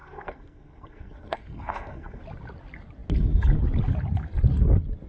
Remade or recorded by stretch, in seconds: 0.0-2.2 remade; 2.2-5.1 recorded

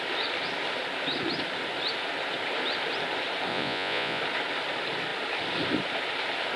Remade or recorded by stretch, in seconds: 0.0-3.5 recorded; 3.5-4.2 remade; 4.2-6.6 recorded

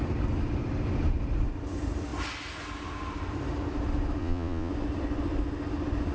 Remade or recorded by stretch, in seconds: 0.0-4.2 recorded; 4.2-4.7 remade; 4.7-6.1 recorded

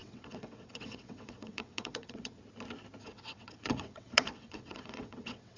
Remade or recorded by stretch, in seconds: 0.0-2.4 remade; 2.4-3.0 recorded; 3.0-5.6 remade

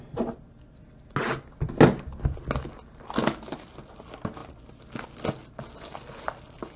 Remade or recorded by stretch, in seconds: 0.0-6.8 recorded